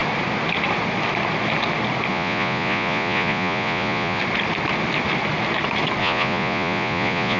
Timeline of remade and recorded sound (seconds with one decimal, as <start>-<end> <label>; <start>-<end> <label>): 0.0-2.1 recorded; 2.1-4.2 remade; 4.2-6.0 recorded; 6.0-7.4 remade